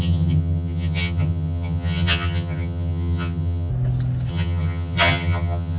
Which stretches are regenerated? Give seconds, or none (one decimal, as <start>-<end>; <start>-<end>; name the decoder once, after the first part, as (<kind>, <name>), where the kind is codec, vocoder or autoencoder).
0.0-3.7 (vocoder, HiFi-GAN); 4.3-5.8